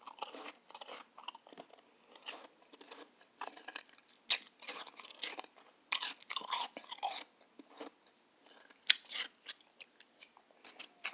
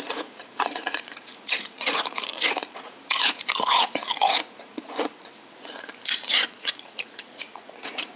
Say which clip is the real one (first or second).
first